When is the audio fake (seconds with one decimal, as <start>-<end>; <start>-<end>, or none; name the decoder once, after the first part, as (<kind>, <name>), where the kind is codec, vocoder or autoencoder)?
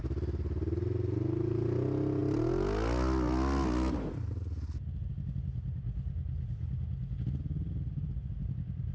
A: none